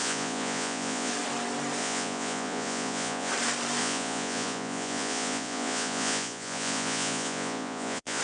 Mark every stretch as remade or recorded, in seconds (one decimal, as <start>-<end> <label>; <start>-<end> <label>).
0.0-1.1 remade; 1.1-1.8 recorded; 1.8-3.3 remade; 3.3-3.8 recorded; 3.8-8.2 remade